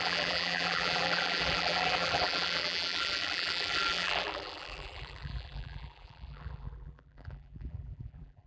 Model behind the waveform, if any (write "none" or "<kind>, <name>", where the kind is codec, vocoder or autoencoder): vocoder, BigVGAN v2